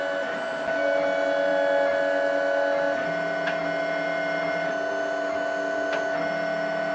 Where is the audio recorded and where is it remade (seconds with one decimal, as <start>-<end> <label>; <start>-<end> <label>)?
0.0-6.9 recorded